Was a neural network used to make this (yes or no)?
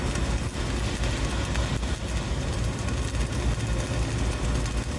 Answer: no